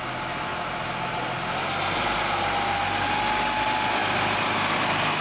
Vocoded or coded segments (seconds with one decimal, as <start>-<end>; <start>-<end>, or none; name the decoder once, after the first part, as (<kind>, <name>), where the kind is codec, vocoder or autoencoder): none